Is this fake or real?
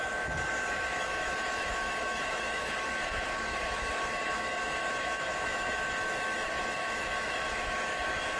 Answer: fake